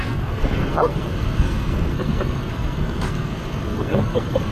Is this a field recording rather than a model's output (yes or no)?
no